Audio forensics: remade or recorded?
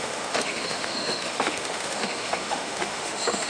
remade